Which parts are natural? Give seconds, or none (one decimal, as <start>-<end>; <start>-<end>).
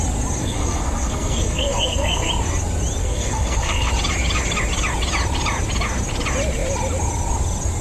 0.0-0.4; 2.3-3.0; 3.9-7.8